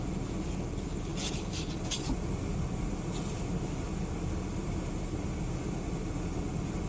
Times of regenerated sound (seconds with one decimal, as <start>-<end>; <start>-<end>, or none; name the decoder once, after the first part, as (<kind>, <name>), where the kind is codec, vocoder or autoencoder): none